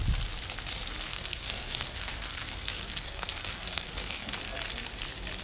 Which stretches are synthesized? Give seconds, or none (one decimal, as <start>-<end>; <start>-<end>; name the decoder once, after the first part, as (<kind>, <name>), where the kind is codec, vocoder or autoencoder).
1.1-4.3 (codec, SNAC)